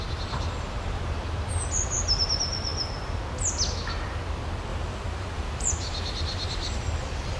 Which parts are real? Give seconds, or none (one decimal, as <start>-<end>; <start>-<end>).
0.0-4.7; 6.8-7.4